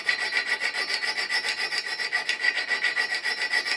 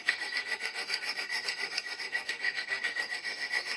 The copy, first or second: second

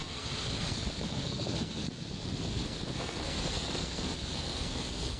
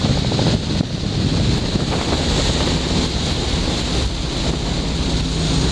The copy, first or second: first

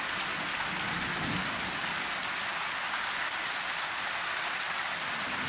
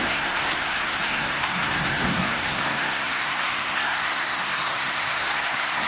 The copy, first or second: second